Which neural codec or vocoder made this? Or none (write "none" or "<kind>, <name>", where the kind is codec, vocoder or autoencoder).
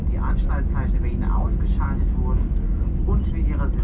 none